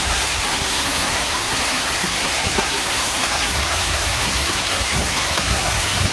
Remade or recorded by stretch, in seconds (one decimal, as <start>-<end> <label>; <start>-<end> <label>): 0.0-6.1 remade

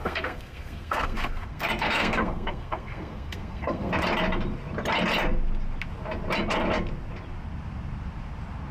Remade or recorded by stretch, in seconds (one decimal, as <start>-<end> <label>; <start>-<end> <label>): 0.0-3.9 remade; 3.9-8.7 recorded

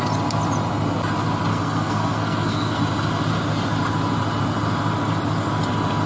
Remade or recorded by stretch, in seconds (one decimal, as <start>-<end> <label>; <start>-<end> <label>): 0.0-1.5 recorded; 1.5-2.8 remade; 2.8-6.1 recorded

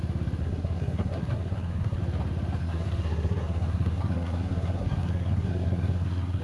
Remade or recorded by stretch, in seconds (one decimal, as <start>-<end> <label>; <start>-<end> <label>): 0.0-0.4 recorded; 0.4-2.0 remade; 2.0-2.6 recorded; 2.6-6.4 remade